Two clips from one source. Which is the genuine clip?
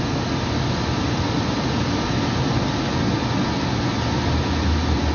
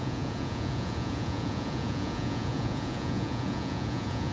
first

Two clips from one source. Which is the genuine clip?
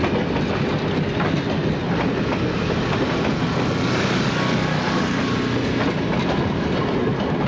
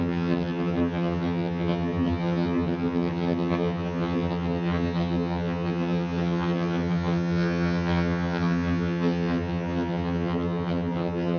first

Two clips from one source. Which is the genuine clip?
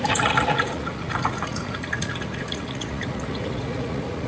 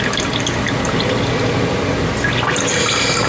second